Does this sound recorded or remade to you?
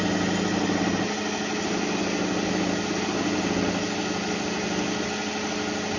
recorded